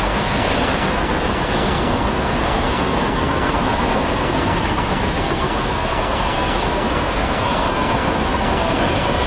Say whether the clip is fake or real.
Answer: fake